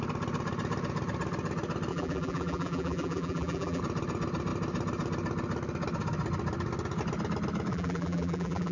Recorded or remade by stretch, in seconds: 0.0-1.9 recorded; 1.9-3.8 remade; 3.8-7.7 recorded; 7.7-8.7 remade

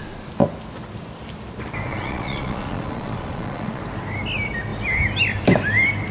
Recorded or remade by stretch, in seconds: 0.0-1.9 recorded; 1.9-3.8 remade; 3.8-6.1 recorded

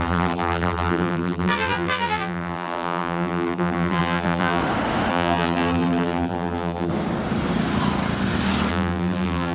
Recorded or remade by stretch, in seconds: 0.0-4.6 remade; 4.6-5.1 recorded; 5.1-6.9 remade; 6.9-8.7 recorded; 8.7-9.5 remade